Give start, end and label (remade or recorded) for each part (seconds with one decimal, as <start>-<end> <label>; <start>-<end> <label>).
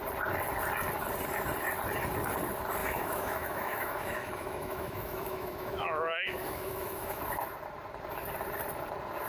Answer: 0.0-2.8 recorded; 2.8-7.2 remade; 7.2-9.3 recorded